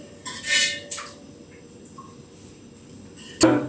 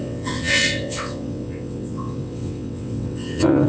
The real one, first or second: first